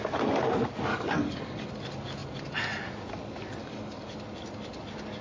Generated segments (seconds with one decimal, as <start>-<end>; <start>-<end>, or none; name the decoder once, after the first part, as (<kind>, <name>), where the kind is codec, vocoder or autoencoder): 0.9-1.7 (codec, DAC); 3.6-4.1